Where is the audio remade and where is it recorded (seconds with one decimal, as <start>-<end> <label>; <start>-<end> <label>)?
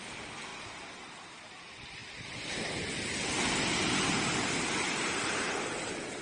0.0-6.2 recorded